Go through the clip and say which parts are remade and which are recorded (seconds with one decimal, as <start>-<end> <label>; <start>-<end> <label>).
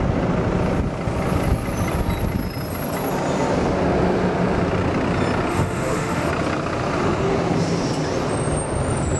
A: 0.0-5.5 recorded; 5.5-6.3 remade; 6.3-9.2 recorded